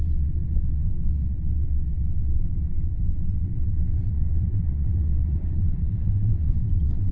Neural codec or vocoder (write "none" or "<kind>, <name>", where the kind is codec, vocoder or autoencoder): vocoder, WaveNeXt